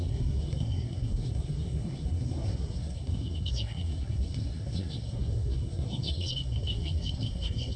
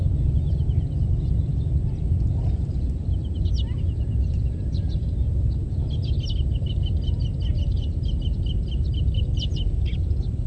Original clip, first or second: second